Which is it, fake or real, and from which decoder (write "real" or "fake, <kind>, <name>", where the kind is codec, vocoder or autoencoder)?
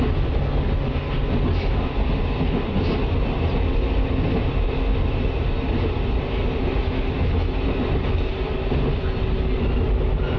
real